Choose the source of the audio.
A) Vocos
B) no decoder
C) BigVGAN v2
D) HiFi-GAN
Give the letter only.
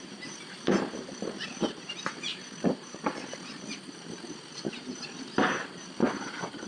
C